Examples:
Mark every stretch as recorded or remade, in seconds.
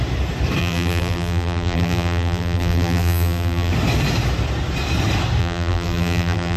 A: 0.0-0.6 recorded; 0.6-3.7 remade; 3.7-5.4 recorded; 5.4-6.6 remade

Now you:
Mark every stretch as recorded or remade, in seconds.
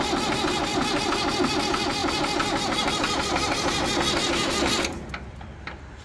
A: 0.0-6.0 recorded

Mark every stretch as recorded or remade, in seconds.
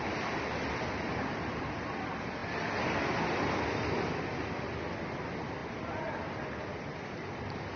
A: 0.0-7.8 recorded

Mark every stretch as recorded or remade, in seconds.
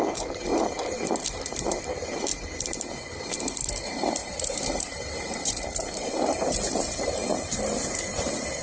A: 0.0-0.5 recorded; 0.5-1.8 remade; 1.8-4.2 recorded; 4.2-7.6 remade; 7.6-8.6 recorded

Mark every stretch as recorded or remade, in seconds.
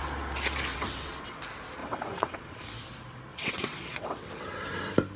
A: 0.0-0.7 recorded; 0.7-1.4 remade; 1.4-1.8 recorded; 1.8-2.6 remade; 2.6-3.3 recorded; 3.3-4.4 remade; 4.4-5.2 recorded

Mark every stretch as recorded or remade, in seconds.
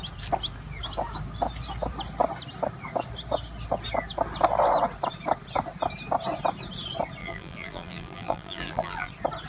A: 0.0-7.2 recorded; 7.2-9.1 remade; 9.1-9.5 recorded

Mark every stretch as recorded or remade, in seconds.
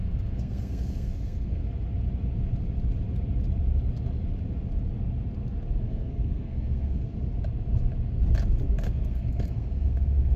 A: 0.0-1.6 remade; 1.6-5.8 recorded; 5.8-7.1 remade; 7.1-8.8 recorded; 8.8-10.4 remade